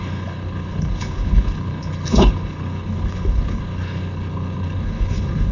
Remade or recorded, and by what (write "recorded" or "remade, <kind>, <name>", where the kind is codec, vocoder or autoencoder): remade, codec, HILCodec